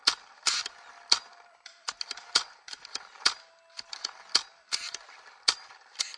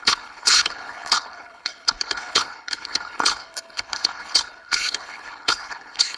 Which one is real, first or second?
first